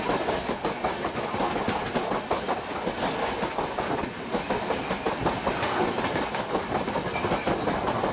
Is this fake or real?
real